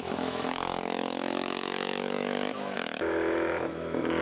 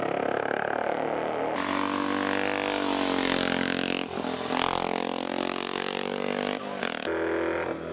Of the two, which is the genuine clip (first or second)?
second